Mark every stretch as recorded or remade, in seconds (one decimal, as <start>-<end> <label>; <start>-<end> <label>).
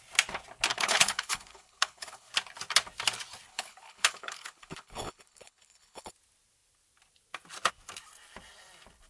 0.0-0.7 recorded; 0.7-2.3 remade; 2.3-3.5 recorded; 3.5-6.1 remade; 6.1-9.1 recorded